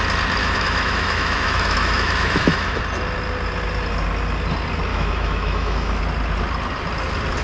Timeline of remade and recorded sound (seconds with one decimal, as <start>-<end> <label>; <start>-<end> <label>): 0.0-0.4 recorded; 0.4-2.8 remade; 2.8-4.9 recorded; 4.9-6.0 remade; 6.0-7.4 recorded